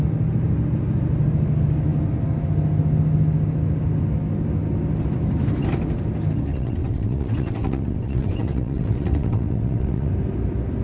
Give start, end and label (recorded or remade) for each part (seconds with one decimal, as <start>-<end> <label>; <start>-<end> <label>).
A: 0.0-6.5 recorded; 6.5-10.1 remade; 10.1-10.8 recorded